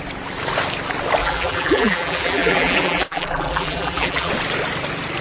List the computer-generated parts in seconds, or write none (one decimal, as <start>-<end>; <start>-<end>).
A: 1.2-4.3